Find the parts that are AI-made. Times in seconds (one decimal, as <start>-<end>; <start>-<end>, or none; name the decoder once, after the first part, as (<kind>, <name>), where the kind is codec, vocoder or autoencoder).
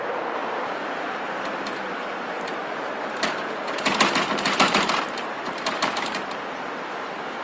0.0-7.4 (vocoder, BigVGAN v2)